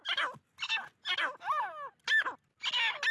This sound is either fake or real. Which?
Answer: real